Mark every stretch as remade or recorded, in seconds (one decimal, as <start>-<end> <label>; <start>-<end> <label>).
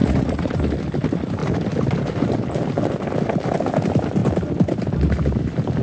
0.0-0.5 remade; 0.5-5.8 recorded